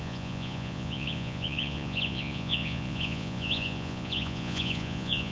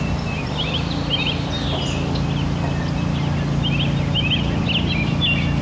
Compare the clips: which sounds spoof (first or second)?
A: first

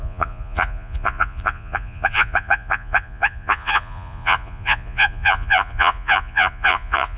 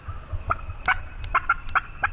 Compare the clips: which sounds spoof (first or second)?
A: first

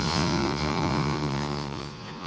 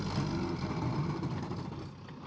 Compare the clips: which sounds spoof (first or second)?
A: first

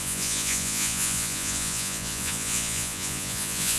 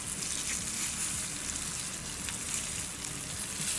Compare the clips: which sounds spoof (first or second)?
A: first